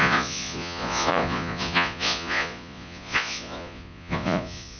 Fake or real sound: fake